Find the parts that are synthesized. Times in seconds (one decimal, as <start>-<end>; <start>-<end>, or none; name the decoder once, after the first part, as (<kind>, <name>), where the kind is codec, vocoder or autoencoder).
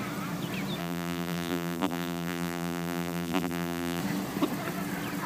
0.8-4.0 (vocoder, BigVGAN v2)